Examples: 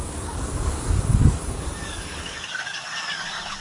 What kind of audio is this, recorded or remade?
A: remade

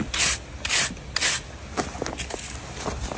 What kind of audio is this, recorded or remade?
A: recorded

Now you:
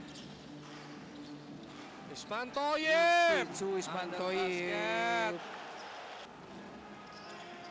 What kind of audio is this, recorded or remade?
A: recorded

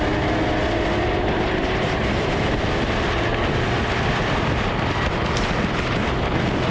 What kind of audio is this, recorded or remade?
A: recorded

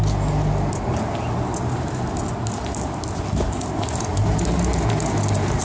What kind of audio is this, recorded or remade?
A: recorded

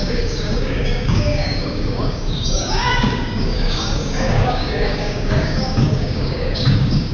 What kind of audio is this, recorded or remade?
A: remade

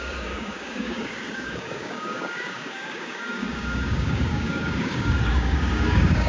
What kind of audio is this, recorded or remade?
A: remade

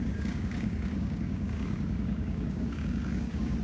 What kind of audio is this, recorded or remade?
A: remade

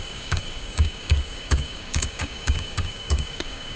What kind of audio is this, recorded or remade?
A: remade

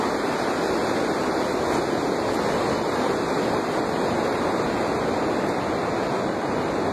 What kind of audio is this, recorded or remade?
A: recorded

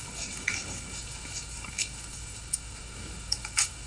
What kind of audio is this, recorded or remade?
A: remade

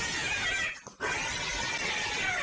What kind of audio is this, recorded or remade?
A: recorded